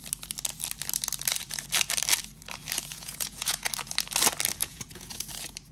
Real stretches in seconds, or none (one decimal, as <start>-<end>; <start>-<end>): 0.0-2.9; 3.7-4.6; 5.3-5.7